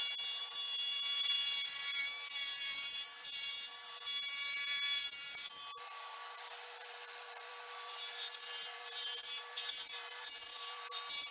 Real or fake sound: fake